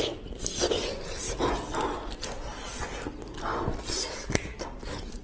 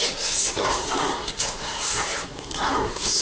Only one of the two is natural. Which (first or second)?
first